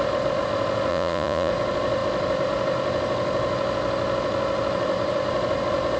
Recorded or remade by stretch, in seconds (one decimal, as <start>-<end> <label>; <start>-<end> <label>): 0.0-0.9 recorded; 0.9-1.5 remade; 1.5-6.0 recorded